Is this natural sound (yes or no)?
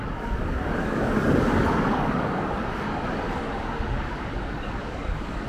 no